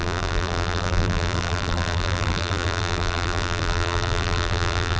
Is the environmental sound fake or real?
fake